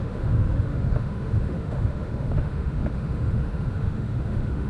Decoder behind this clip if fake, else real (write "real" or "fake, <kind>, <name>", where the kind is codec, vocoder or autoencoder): fake, autoencoder, DAC-VAE